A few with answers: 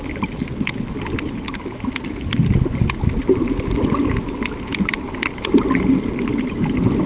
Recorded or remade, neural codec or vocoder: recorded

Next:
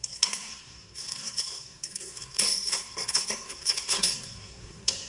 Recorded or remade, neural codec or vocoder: remade, codec, SNAC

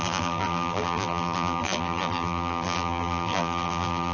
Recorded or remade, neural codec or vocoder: remade, vocoder, BigVGAN v2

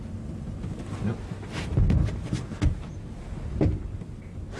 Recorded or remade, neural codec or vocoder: recorded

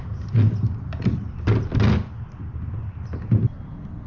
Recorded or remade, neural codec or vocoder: recorded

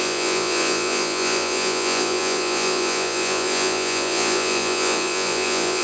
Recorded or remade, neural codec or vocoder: remade, vocoder, Vocos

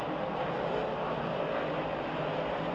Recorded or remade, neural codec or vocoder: recorded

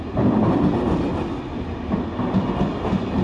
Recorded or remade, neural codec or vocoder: recorded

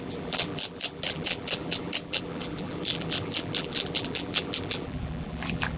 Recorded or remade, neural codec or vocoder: remade, vocoder, BigVGAN v2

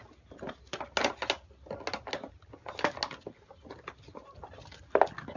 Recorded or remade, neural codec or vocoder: recorded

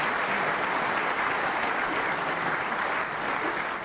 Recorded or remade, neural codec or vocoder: recorded